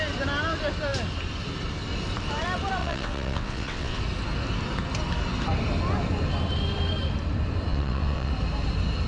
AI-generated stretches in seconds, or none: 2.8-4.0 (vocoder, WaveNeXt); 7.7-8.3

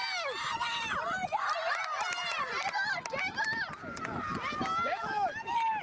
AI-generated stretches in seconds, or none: 2.2-3.2 (vocoder, BigVGAN v2)